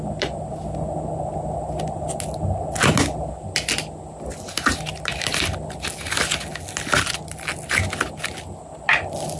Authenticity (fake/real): real